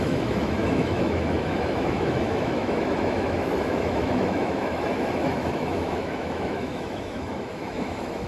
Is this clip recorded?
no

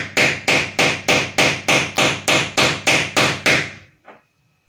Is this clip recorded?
yes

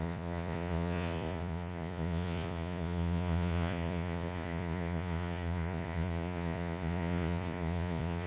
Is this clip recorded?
no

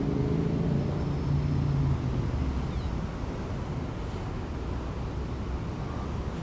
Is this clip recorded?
yes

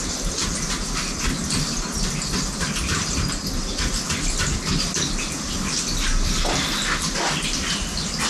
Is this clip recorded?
yes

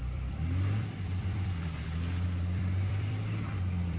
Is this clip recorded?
no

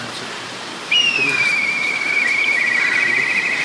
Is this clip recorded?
no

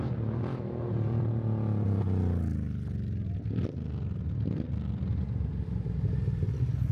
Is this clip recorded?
yes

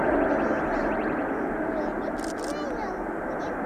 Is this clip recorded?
yes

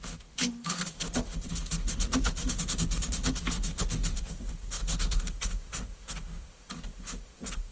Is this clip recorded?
no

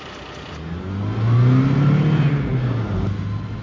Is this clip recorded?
yes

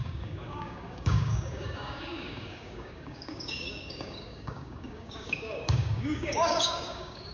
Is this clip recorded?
no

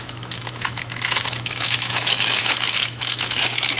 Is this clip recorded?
no